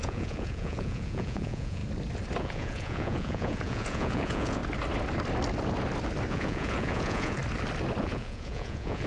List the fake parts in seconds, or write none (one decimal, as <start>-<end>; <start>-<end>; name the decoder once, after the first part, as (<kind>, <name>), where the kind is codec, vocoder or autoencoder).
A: 0.0-1.8 (vocoder, Vocos); 2.4-4.6; 6.3-7.4; 8.0-9.1